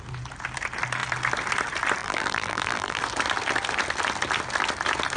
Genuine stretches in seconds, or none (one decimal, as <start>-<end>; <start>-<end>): 0.0-2.0; 3.0-5.2

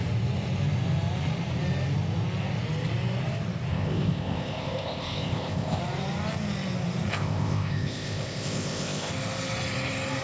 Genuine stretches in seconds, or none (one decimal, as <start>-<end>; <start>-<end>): 0.0-3.7; 5.8-7.1; 9.1-10.2

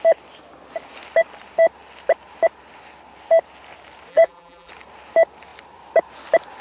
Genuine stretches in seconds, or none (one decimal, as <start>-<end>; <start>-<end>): 0.0-4.1; 4.7-6.6

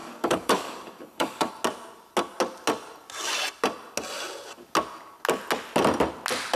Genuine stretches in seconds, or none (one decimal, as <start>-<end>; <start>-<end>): 1.5-6.6

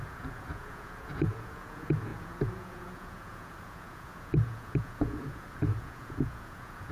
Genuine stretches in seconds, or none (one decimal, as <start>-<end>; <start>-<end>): none

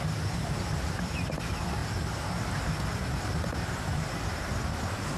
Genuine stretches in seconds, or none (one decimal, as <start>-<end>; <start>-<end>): 0.0-5.2

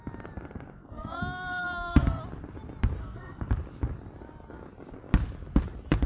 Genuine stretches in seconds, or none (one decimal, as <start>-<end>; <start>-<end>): 0.0-0.8; 2.2-3.0; 3.5-6.1